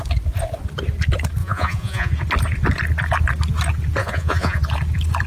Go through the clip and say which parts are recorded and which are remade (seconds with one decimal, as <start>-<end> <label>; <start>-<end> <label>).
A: 0.0-1.4 recorded; 1.4-2.1 remade; 2.1-4.0 recorded; 4.0-4.6 remade; 4.6-5.3 recorded